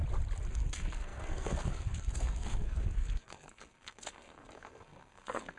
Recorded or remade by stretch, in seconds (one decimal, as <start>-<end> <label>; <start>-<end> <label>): 0.0-0.5 recorded; 0.5-5.6 remade